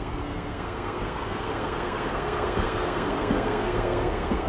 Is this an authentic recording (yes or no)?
no